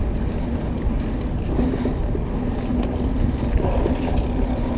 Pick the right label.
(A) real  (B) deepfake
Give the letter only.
A